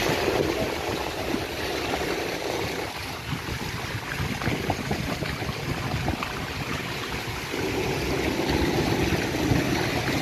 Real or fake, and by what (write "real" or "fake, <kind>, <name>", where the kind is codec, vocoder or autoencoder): real